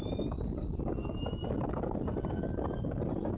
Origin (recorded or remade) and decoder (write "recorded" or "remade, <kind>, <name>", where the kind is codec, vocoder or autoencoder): recorded